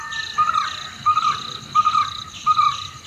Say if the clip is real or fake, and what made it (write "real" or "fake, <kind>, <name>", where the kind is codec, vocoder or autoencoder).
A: real